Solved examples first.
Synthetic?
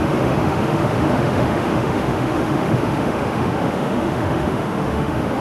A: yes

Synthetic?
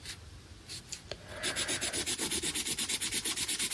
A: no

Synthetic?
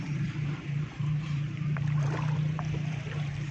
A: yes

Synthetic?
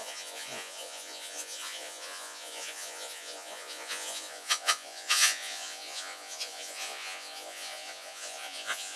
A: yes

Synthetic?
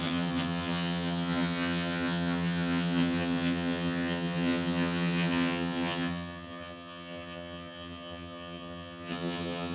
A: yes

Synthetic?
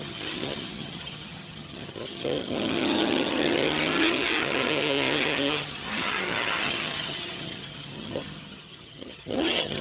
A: yes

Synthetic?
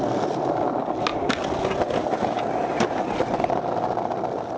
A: no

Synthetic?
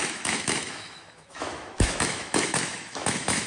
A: yes